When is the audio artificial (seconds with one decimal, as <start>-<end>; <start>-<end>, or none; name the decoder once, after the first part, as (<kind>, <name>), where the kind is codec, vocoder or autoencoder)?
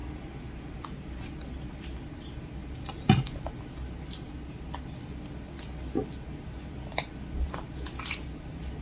2.6-3.6 (vocoder, BigVGAN v2)